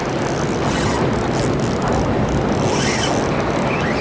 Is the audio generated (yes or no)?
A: no